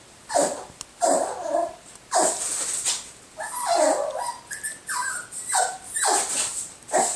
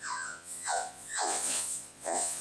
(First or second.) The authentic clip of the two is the first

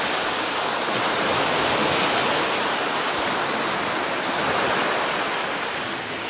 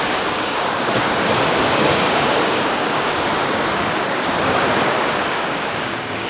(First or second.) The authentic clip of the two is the first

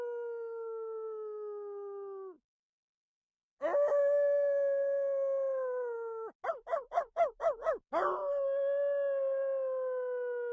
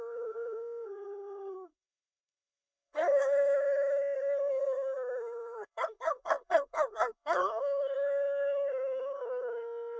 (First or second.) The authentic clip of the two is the first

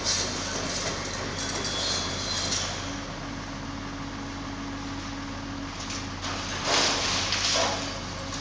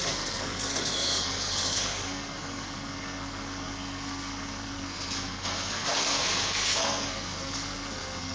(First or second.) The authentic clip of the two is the first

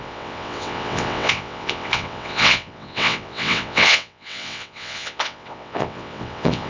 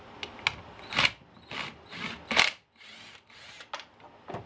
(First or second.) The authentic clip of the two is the second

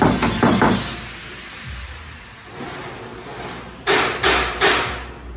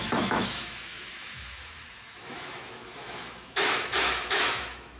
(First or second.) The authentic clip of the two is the first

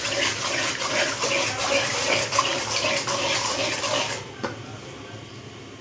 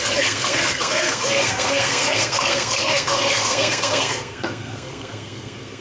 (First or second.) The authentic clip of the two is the first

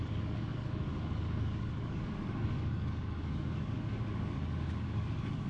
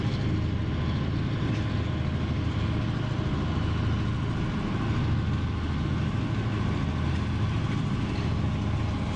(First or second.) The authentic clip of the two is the second